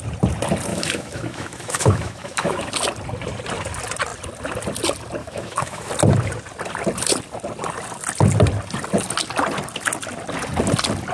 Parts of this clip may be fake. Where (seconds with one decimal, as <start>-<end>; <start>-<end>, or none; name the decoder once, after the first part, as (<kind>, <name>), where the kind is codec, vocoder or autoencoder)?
0.7-2.7 (autoencoder, DAC-VAE); 5.2-5.9